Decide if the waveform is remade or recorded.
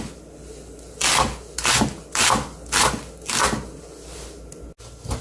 recorded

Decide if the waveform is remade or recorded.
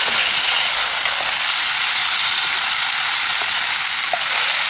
recorded